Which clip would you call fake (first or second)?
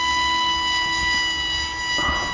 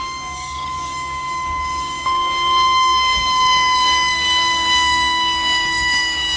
second